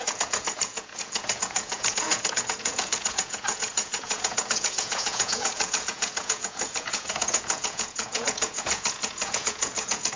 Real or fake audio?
fake